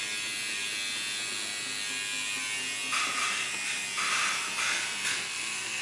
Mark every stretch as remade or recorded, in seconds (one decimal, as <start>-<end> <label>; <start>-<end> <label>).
0.0-5.1 recorded; 5.1-5.8 remade